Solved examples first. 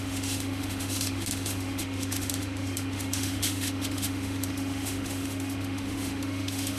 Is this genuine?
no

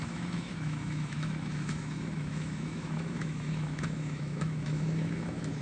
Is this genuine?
no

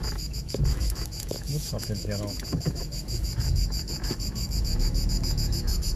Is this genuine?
no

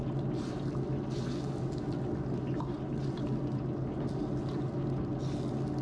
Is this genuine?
yes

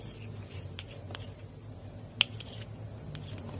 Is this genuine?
yes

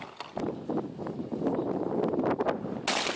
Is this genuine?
yes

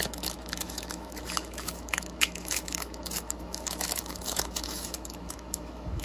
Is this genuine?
no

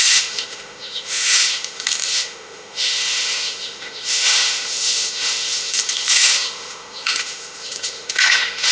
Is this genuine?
no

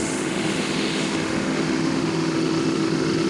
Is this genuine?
no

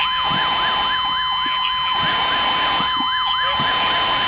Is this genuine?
yes